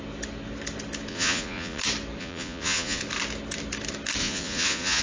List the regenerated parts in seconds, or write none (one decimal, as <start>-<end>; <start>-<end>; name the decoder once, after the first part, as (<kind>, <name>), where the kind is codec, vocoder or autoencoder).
1.1-1.8 (vocoder, Vocos); 2.2-3.0; 4.2-5.0